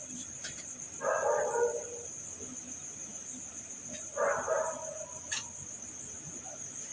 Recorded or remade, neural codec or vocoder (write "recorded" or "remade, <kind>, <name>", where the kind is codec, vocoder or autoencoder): recorded